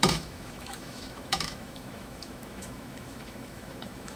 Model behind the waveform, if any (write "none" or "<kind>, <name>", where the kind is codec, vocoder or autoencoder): autoencoder, DAC-VAE